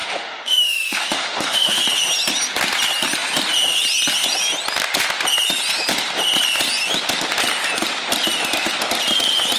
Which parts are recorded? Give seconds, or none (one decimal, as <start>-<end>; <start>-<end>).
1.8-9.6